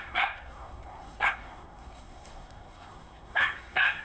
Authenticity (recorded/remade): remade